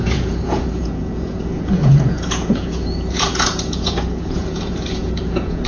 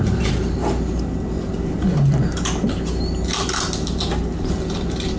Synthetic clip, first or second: first